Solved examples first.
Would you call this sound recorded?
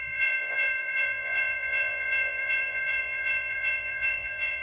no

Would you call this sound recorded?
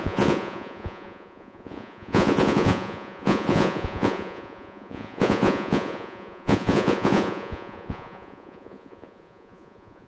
no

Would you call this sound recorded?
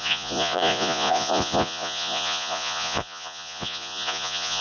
no